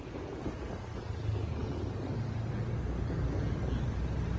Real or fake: real